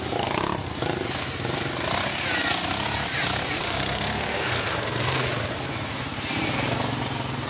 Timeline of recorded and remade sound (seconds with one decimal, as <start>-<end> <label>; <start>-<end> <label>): 0.0-3.6 recorded; 3.6-5.3 remade; 5.3-7.5 recorded